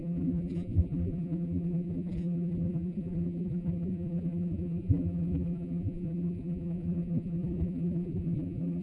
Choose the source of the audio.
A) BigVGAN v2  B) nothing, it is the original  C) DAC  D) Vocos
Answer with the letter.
A